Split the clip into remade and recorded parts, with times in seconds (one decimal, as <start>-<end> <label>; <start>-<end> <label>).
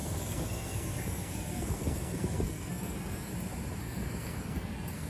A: 0.0-3.3 remade; 3.3-3.8 recorded; 3.8-5.1 remade